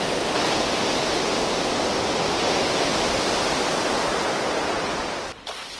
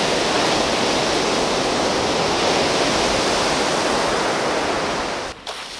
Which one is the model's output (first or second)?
first